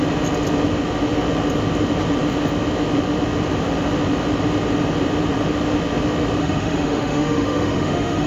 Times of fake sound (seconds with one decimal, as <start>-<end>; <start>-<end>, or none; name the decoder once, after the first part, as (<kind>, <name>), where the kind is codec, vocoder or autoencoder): 6.4-8.3 (autoencoder, DAC-VAE)